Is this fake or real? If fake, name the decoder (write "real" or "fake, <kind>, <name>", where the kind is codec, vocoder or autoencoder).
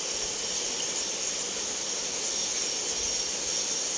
real